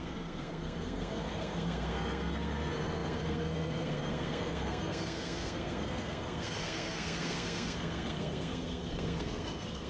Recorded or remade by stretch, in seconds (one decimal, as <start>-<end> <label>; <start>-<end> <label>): 0.0-9.9 remade